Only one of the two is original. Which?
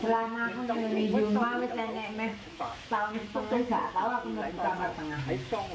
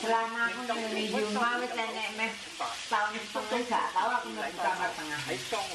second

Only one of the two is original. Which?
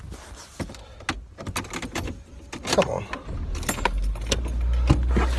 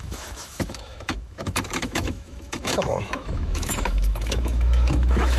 first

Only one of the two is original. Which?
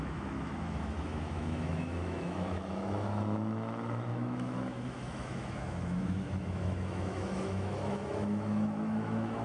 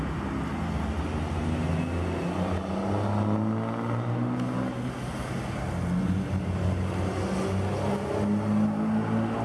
second